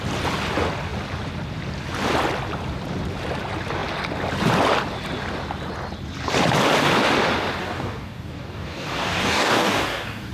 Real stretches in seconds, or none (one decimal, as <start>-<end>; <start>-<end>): 0.0-7.6